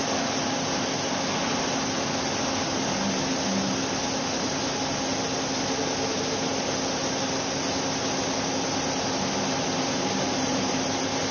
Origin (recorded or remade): recorded